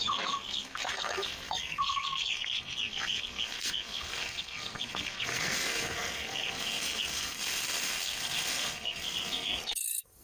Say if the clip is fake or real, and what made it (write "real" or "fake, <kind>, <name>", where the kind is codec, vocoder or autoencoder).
fake, codec, SNAC